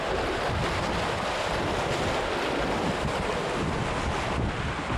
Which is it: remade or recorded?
recorded